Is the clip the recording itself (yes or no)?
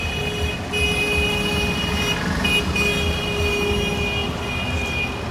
yes